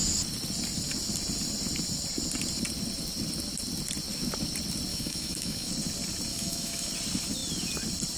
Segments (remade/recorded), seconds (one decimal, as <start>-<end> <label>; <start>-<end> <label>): 0.0-4.9 recorded; 4.9-5.7 remade; 5.7-6.3 recorded; 6.3-6.9 remade; 6.9-8.2 recorded

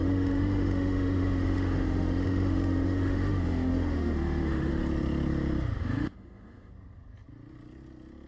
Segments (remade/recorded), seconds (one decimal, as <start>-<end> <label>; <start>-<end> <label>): 0.0-4.7 remade; 4.7-5.8 recorded; 5.8-6.7 remade; 6.7-8.3 recorded

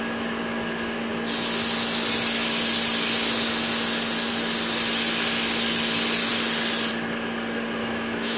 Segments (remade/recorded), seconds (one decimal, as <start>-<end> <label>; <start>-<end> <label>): 0.0-7.8 recorded; 7.8-8.4 remade

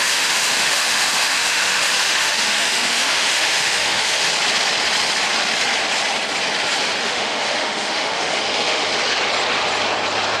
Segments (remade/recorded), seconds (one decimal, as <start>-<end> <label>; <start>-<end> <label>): 0.0-4.3 remade; 4.3-7.0 recorded; 7.0-8.9 remade; 8.9-10.4 recorded

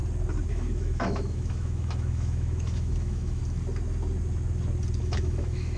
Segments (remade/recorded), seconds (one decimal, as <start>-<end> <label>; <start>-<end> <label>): 0.0-0.5 recorded; 0.5-3.4 remade; 3.4-5.0 recorded; 5.0-5.8 remade

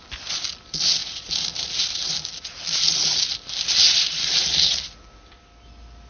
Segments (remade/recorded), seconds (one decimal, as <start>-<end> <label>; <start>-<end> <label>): 0.0-6.1 recorded

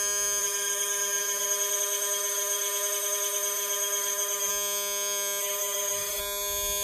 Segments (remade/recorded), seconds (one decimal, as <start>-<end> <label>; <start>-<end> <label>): 0.0-0.4 recorded; 0.4-4.5 remade; 4.5-5.4 recorded; 5.4-6.2 remade; 6.2-6.8 recorded